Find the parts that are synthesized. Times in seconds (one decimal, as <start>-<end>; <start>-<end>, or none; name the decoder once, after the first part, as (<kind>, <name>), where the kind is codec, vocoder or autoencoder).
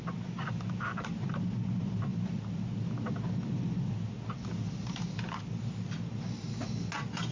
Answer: none